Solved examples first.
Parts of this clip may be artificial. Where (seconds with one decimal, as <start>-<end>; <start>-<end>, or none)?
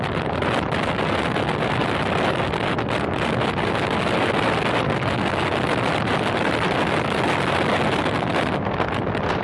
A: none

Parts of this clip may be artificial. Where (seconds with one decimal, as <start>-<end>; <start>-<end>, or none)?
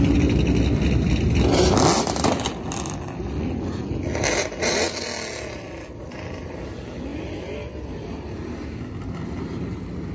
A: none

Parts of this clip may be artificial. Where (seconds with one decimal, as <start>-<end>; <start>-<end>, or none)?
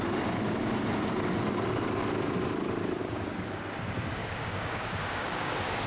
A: 3.0-3.6; 4.2-5.5